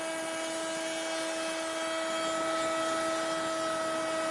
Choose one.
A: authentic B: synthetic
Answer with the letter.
A